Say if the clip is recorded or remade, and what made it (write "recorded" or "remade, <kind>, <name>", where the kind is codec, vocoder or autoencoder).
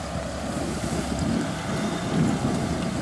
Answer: recorded